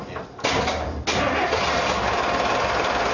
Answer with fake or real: real